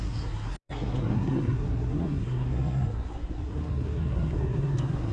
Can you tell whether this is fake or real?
fake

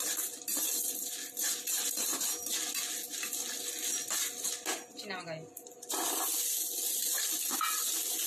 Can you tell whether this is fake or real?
real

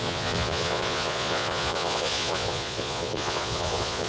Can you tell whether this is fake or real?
fake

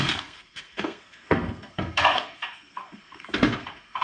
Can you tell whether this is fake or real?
fake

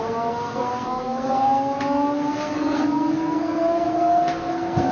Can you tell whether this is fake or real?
fake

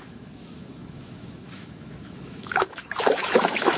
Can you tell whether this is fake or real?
fake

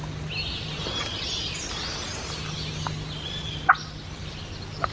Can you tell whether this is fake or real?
real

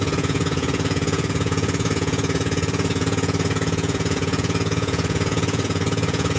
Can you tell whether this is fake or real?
fake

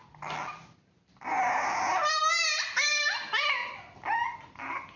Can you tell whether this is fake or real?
real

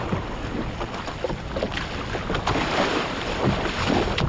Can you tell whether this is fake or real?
real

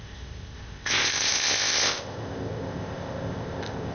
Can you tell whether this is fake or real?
fake